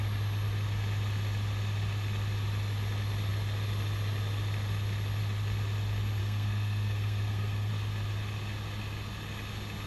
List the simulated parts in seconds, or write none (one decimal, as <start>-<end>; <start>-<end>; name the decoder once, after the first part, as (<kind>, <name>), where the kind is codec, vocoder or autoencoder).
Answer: 6.2-7.7 (codec, SNAC)